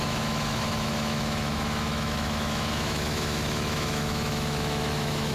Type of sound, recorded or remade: remade